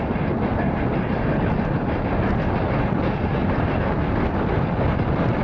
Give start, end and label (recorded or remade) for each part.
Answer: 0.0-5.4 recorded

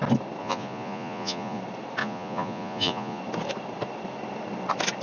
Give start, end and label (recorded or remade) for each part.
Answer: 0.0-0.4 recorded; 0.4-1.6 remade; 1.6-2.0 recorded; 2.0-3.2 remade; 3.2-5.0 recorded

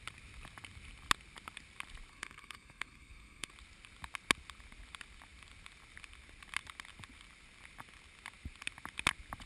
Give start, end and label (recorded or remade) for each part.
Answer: 0.0-2.1 recorded; 2.1-3.5 remade; 3.5-9.5 recorded

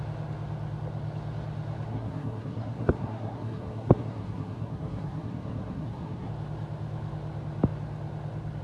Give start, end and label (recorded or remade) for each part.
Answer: 0.0-1.9 recorded; 1.9-6.3 remade; 6.3-8.6 recorded

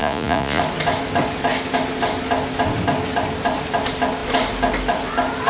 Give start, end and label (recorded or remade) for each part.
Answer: 0.0-0.6 remade; 0.6-5.5 recorded